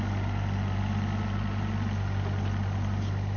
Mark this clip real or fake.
real